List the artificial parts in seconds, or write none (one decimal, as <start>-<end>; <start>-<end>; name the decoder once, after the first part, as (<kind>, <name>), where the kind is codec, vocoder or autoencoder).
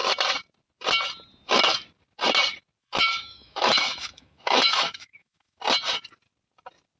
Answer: 2.8-5.6 (autoencoder, DAC-VAE)